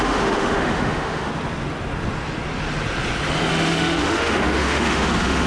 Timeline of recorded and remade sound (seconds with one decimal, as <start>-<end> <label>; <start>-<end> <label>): 0.0-1.3 remade; 1.3-3.5 recorded; 3.5-5.5 remade